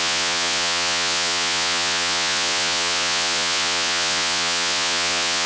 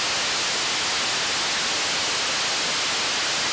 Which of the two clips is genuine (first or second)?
second